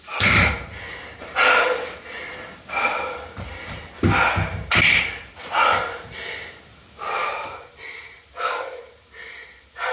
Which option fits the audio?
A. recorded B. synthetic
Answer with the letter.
A